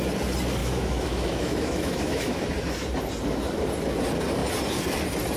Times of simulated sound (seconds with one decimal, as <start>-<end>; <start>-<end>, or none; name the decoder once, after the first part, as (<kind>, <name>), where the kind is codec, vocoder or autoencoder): 0.6-2.4 (autoencoder, DAC-VAE)